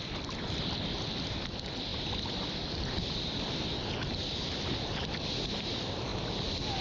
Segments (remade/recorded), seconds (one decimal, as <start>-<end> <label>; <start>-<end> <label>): 0.0-6.8 recorded